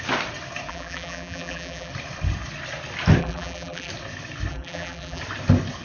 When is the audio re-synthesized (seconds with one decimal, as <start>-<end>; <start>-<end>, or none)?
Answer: 0.7-1.9; 3.2-3.9; 4.5-5.2